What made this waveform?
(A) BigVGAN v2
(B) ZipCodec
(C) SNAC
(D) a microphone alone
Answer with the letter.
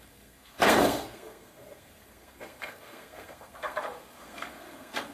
C